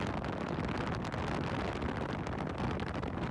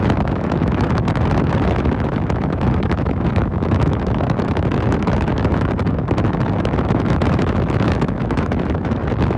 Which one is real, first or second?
first